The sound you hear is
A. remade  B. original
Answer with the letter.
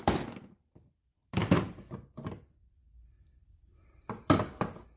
A